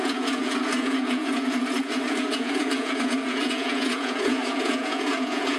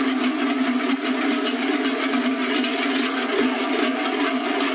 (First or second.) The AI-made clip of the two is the first